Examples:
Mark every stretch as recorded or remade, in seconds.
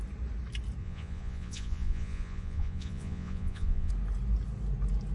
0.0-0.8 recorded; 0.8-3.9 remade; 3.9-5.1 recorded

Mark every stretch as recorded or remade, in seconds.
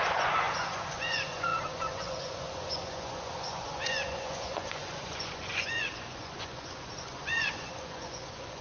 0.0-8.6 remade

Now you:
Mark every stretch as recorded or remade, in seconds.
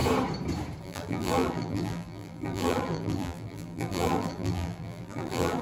0.0-0.8 recorded; 0.8-5.6 remade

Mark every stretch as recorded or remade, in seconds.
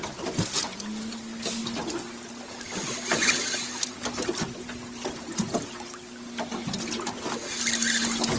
0.0-8.4 recorded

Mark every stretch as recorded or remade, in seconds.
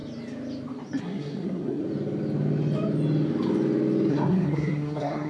0.0-1.0 recorded; 1.0-1.8 remade; 1.8-4.1 recorded; 4.1-5.3 remade